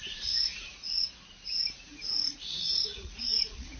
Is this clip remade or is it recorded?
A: remade